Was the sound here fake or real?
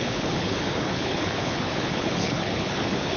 fake